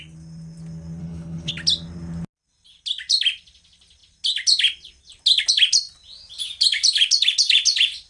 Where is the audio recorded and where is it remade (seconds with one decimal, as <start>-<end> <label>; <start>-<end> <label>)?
0.0-1.0 recorded; 1.0-1.5 remade; 1.5-8.1 recorded